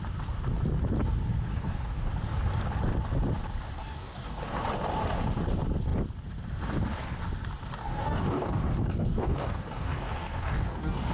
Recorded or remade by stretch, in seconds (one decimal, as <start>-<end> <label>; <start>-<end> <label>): 0.0-1.5 recorded; 1.5-2.1 remade; 2.1-3.8 recorded; 3.8-4.4 remade; 4.4-7.8 recorded; 7.8-11.1 remade